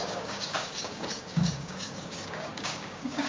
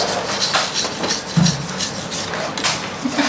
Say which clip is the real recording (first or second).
second